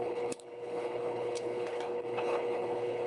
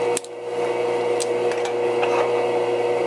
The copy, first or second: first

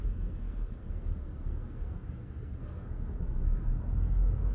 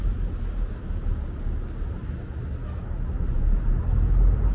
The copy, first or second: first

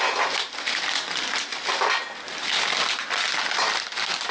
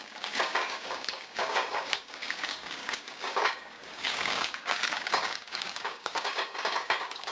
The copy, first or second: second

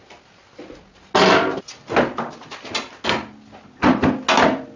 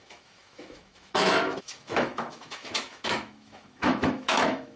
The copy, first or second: second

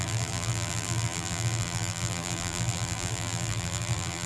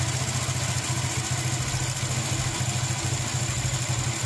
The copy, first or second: first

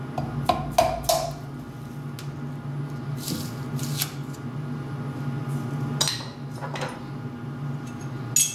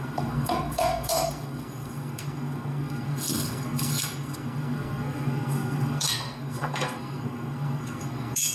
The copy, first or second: second